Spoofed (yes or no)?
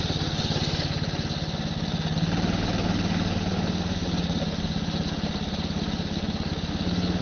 no